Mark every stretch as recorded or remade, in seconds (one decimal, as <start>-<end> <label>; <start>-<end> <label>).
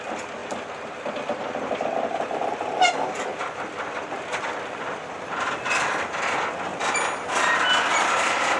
0.0-3.3 remade; 3.3-5.6 recorded; 5.6-6.7 remade; 6.7-7.9 recorded; 7.9-8.6 remade